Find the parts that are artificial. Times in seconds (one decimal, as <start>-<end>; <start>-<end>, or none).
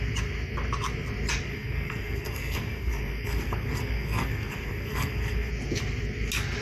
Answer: 1.5-5.5